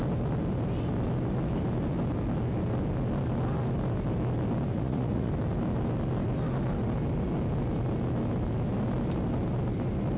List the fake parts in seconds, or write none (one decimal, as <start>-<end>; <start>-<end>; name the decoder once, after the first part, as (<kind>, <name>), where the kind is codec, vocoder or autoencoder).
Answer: 4.7-5.3 (vocoder, Vocos)

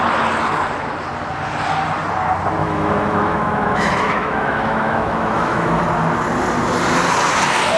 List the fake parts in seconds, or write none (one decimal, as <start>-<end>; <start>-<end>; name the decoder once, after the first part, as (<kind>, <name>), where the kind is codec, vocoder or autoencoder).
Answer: 2.6-5.8 (autoencoder, DAC-VAE)

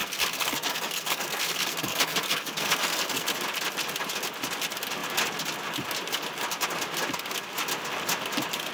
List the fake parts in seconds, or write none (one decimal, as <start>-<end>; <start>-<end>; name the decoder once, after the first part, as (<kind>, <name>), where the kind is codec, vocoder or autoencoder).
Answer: 0.0-3.3 (codec, SNAC)

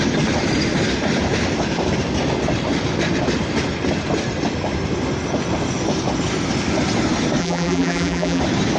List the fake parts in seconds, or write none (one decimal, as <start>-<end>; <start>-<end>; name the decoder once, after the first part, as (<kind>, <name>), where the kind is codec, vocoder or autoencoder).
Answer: 7.4-8.4 (vocoder, BigVGAN v2)

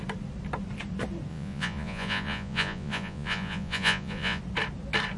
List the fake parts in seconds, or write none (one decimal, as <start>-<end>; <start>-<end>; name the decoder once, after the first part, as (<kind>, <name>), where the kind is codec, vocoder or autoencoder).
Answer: 1.3-4.4 (vocoder, Vocos)

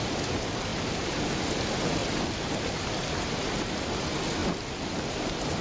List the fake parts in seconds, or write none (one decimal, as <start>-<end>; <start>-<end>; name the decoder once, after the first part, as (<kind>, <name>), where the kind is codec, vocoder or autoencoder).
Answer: 0.0-2.0 (vocoder, BigVGAN v2); 2.5-4.4; 5.1-5.6